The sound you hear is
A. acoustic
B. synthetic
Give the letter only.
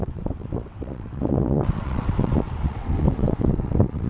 B